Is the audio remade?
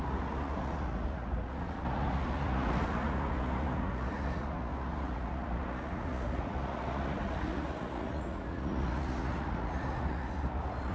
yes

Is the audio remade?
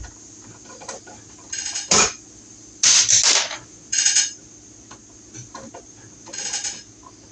no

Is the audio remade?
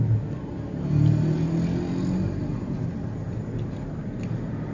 no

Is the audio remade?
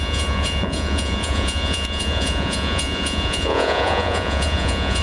yes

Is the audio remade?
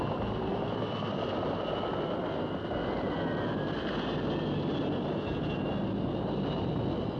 no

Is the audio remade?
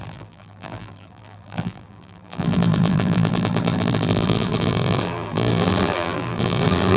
yes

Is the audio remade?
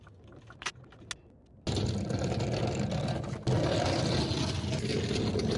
no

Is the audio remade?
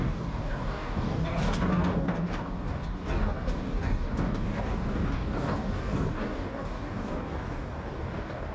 yes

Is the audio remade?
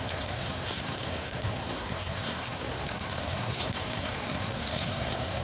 yes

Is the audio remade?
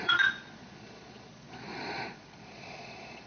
yes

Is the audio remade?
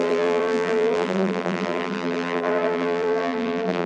yes